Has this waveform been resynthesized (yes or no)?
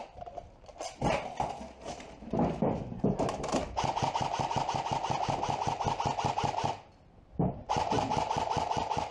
no